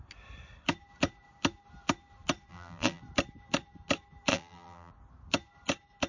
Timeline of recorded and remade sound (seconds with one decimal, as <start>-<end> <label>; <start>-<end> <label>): 0.0-2.5 recorded; 2.5-3.0 remade; 3.0-4.3 recorded; 4.3-4.9 remade; 4.9-6.1 recorded